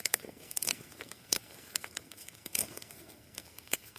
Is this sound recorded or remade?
remade